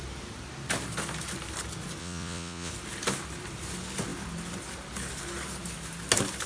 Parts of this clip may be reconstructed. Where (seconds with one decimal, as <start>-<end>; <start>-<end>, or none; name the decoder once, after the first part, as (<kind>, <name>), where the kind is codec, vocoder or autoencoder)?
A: 2.0-2.7 (vocoder, Vocos)

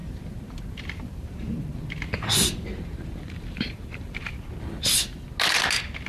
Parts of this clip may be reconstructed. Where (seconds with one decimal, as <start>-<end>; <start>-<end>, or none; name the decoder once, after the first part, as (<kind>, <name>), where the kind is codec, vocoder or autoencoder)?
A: 0.0-1.8 (vocoder, BigVGAN v2); 2.7-4.3